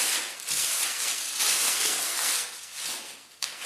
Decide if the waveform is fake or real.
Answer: fake